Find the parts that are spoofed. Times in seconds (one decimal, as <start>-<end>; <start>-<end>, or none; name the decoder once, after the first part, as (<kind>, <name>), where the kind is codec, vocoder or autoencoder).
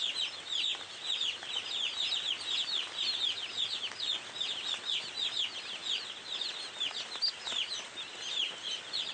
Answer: none